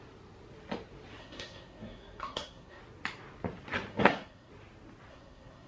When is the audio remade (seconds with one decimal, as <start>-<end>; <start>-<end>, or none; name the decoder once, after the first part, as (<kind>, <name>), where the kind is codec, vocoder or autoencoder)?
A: 1.2-2.8 (codec, SNAC); 3.9-4.5; 5.1-5.7